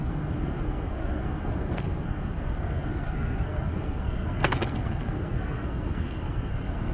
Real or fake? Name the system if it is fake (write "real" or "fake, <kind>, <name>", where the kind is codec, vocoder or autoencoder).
fake, codec, SNAC